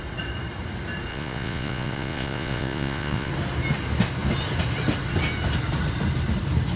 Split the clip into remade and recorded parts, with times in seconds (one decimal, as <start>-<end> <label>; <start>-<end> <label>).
0.0-1.1 recorded; 1.1-3.3 remade; 3.3-6.8 recorded